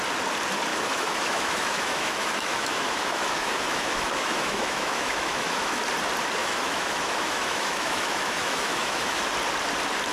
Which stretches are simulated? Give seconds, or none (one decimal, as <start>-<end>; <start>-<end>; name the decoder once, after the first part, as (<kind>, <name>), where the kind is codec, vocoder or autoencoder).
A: 0.7-5.8 (autoencoder, DAC-VAE); 6.4-9.3

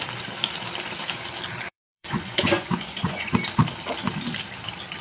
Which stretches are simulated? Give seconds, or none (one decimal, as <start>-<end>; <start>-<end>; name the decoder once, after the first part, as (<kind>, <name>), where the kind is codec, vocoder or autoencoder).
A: 1.7-3.3 (vocoder, Vocos)

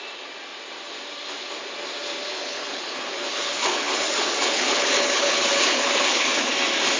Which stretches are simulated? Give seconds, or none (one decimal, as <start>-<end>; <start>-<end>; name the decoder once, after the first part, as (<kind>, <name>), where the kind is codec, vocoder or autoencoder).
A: 2.3-6.5 (codec, HILCodec)

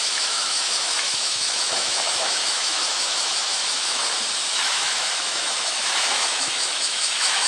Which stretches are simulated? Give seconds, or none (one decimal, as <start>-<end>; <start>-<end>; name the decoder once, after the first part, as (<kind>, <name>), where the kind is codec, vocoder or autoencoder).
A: 0.0-4.0 (autoencoder, DAC-VAE); 4.5-7.5

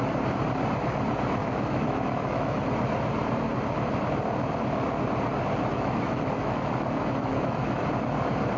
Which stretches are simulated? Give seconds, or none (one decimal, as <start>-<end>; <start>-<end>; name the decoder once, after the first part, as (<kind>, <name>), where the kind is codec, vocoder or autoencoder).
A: 1.4-2.6 (autoencoder, DAC-VAE); 5.7-7.8

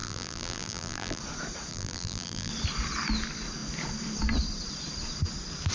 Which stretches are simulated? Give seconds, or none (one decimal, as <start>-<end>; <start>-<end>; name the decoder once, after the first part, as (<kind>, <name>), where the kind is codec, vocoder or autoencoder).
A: 0.0-1.2 (vocoder, BigVGAN v2); 1.7-2.5

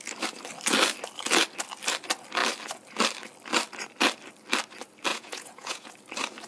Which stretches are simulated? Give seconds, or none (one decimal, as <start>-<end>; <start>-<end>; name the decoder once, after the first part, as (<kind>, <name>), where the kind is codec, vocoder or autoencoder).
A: 5.1-5.9 (vocoder, Vocos)